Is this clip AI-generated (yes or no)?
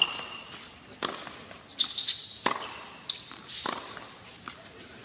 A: no